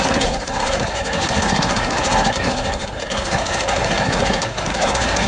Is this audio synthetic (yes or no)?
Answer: yes